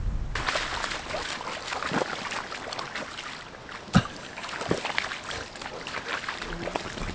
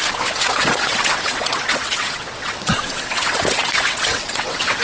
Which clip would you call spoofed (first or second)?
second